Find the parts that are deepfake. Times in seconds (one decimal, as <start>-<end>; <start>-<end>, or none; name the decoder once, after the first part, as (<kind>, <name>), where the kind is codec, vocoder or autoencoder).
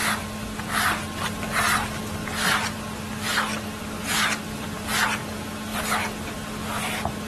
5.7-6.8 (vocoder, BigVGAN v2)